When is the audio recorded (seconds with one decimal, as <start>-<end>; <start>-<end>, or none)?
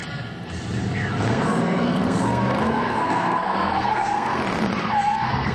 0.0-1.3; 4.4-4.9